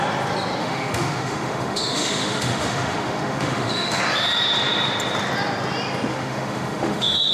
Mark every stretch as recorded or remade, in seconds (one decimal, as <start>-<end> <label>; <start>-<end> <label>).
0.0-0.6 recorded; 0.6-4.0 remade; 4.0-6.1 recorded; 6.1-7.3 remade